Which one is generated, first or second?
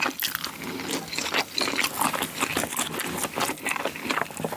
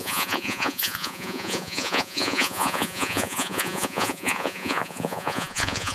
second